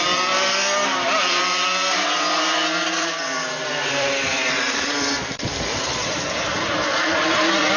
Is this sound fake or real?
fake